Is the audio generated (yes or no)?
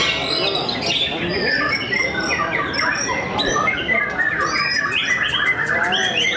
no